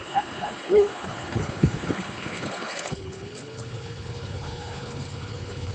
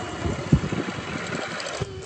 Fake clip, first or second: first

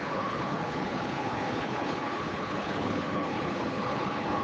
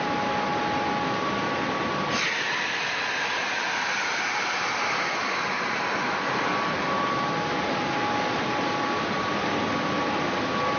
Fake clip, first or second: first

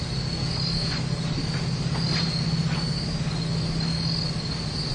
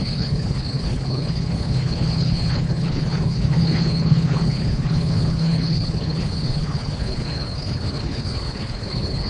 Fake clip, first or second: second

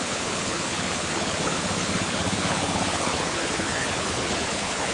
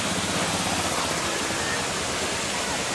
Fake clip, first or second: first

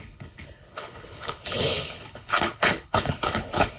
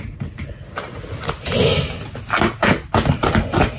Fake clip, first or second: first